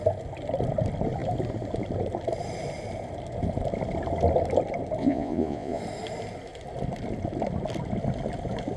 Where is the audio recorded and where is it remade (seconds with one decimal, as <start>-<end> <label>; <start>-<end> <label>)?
0.0-5.0 recorded; 5.0-5.8 remade; 5.8-8.8 recorded